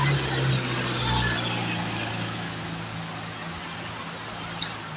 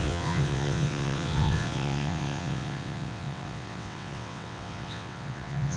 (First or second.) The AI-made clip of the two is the second